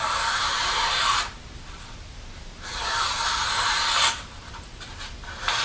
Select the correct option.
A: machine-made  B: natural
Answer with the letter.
A